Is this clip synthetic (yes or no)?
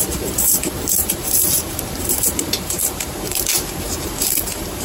yes